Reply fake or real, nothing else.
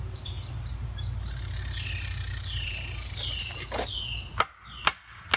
real